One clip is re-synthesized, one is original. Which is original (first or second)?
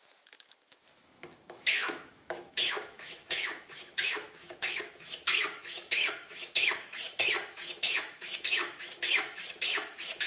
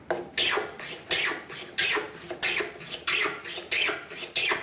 second